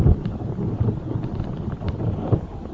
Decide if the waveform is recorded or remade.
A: recorded